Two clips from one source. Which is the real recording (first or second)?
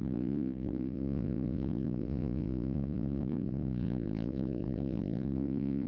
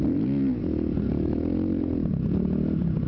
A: second